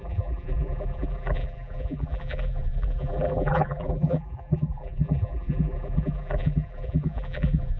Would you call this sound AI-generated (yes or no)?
yes